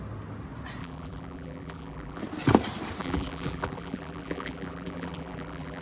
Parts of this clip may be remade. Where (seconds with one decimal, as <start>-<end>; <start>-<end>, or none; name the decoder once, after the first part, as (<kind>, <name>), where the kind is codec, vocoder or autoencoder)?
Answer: 0.8-2.2 (vocoder, BigVGAN v2); 3.0-5.8